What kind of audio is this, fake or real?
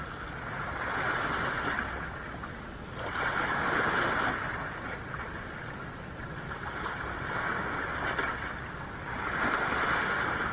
real